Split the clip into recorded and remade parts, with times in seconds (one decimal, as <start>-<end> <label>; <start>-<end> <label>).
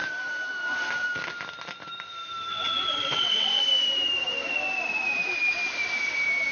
0.0-2.5 recorded; 2.5-3.6 remade; 3.6-6.5 recorded